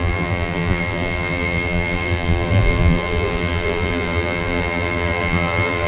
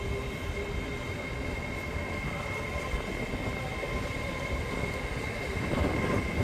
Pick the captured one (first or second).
second